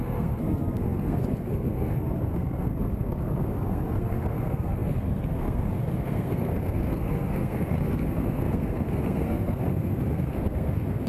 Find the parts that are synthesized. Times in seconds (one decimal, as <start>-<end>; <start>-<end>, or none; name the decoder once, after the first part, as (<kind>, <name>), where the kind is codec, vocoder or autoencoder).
0.0-11.1 (codec, SNAC)